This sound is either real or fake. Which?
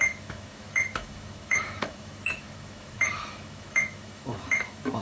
fake